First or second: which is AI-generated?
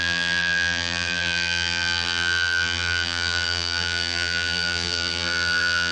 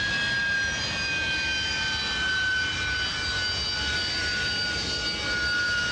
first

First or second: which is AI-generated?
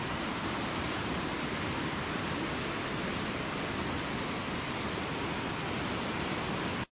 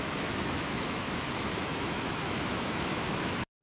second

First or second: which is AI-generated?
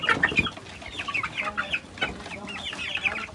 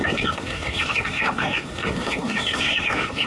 second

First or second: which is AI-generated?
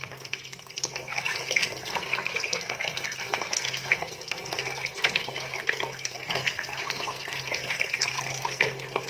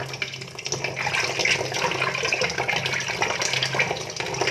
first